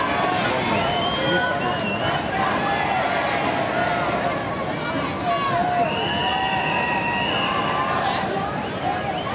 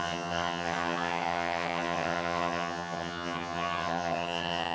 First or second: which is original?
first